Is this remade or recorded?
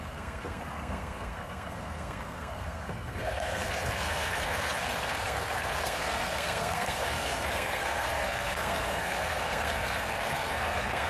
remade